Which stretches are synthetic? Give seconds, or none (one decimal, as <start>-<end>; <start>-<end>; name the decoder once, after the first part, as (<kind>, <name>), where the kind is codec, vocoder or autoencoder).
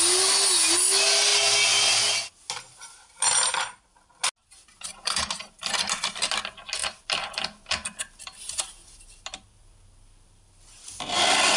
none